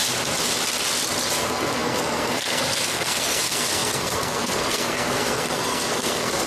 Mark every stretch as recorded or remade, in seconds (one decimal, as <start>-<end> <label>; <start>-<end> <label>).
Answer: 0.0-1.4 recorded; 1.4-6.5 remade